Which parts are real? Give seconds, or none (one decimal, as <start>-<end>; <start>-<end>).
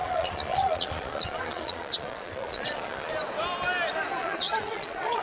3.1-4.2